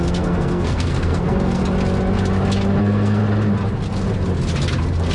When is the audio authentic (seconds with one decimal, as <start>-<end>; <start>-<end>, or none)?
1.6-2.8; 3.2-5.1